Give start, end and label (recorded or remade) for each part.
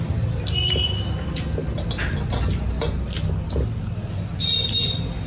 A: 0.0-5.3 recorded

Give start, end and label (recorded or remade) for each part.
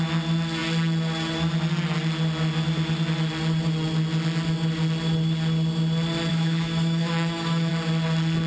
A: 0.0-6.3 recorded; 6.3-7.7 remade; 7.7-8.5 recorded